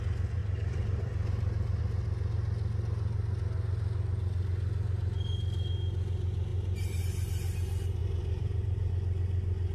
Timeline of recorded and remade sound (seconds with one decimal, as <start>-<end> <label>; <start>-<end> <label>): 0.0-0.4 recorded; 0.4-1.8 remade; 1.8-6.5 recorded; 6.5-7.0 remade; 7.0-8.0 recorded; 8.0-8.9 remade; 8.9-9.7 recorded